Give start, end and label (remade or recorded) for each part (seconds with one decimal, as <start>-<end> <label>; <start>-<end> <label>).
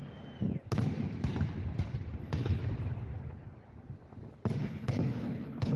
0.0-2.2 recorded; 2.2-2.6 remade; 2.6-4.6 recorded; 4.6-5.8 remade